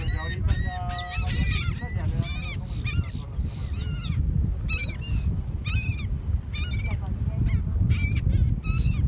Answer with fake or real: real